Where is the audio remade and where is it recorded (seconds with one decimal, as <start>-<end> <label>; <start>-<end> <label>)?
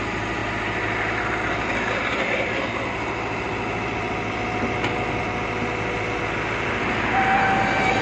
0.0-8.0 recorded